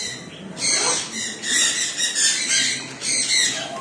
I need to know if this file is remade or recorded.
recorded